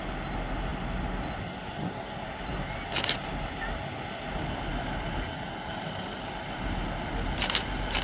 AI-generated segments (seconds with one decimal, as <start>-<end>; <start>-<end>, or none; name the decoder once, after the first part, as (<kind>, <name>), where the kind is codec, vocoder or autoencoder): none